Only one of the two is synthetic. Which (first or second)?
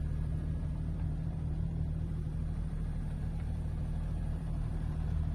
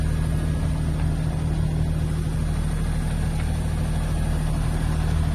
first